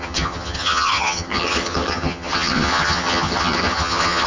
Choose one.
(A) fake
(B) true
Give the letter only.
A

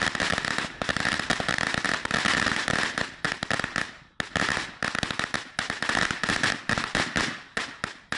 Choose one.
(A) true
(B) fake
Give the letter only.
A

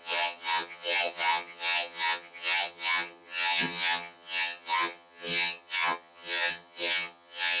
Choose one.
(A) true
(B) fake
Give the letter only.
B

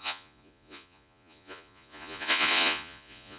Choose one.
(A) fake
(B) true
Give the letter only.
A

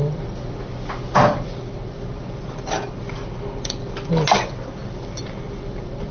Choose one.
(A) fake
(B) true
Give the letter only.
B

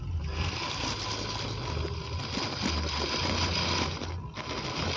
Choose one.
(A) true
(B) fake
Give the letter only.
A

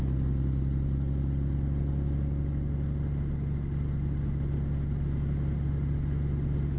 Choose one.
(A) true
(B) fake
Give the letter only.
A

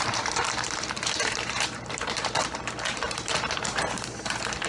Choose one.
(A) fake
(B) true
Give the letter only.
A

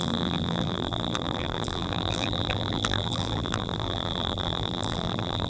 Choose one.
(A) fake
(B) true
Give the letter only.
A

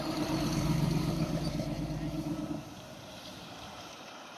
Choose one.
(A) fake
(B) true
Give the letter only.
A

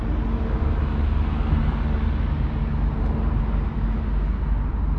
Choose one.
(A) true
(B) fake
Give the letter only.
A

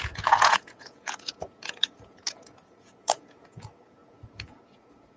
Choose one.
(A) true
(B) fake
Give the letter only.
B